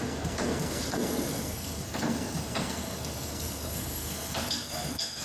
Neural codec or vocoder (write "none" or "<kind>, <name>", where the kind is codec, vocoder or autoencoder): codec, SNAC